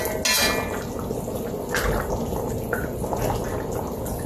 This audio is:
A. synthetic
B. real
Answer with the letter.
B